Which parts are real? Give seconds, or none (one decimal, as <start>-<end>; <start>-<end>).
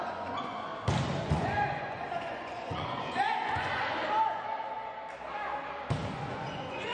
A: 0.7-1.2; 4.0-6.1